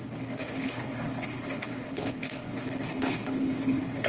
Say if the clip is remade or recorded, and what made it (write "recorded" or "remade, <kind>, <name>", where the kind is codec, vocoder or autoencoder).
remade, codec, HILCodec